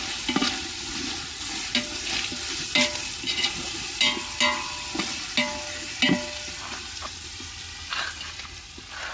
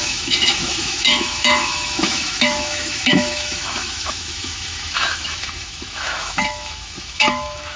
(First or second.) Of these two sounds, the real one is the first